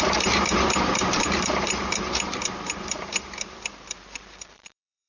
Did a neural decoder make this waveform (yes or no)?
yes